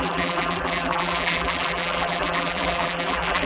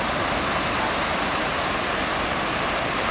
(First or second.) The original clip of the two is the second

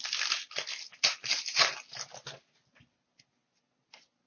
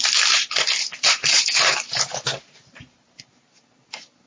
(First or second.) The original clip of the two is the first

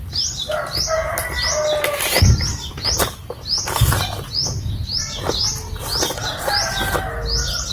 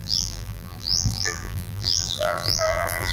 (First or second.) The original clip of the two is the first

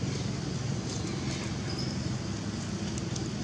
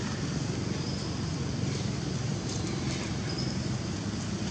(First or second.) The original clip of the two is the first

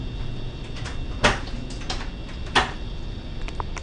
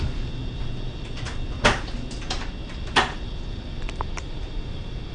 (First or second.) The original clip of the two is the first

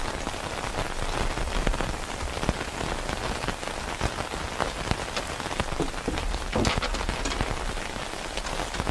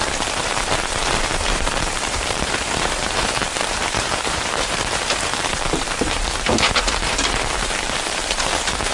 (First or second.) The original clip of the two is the first